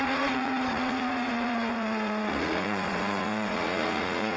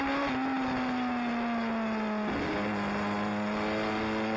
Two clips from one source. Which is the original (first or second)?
second